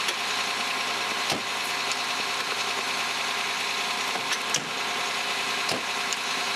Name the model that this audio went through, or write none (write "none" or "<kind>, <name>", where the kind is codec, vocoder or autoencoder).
none